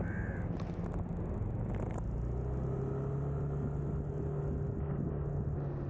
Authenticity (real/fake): real